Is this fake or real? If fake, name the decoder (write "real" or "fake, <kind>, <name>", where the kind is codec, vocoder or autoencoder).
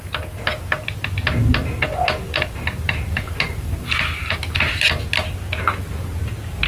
real